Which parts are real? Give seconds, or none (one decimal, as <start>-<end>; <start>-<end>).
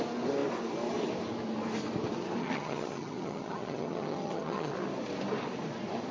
0.0-2.4; 4.7-6.1